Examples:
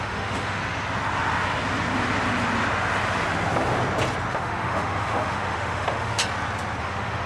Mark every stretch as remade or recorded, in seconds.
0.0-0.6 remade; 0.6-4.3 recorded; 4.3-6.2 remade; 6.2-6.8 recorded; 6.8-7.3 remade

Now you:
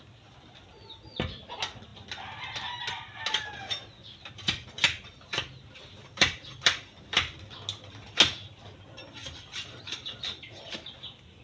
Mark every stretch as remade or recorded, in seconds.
0.0-11.4 recorded

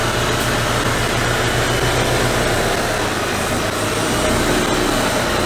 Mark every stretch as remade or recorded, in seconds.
0.0-5.5 recorded

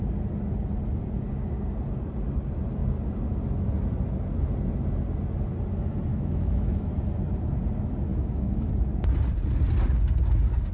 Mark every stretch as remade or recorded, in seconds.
0.0-6.1 recorded; 6.1-6.9 remade; 6.9-8.1 recorded; 8.1-8.7 remade; 8.7-10.7 recorded

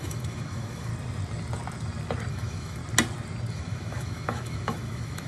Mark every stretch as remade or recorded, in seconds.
0.0-0.9 remade; 0.9-2.3 recorded; 2.3-2.8 remade; 2.8-3.5 recorded; 3.5-5.3 remade